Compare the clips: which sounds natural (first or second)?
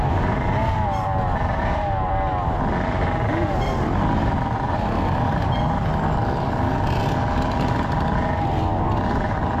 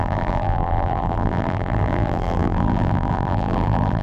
first